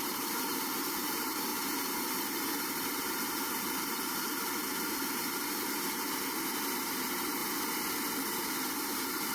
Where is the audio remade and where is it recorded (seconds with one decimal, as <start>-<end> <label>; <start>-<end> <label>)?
0.0-7.4 remade; 7.4-8.4 recorded; 8.4-9.3 remade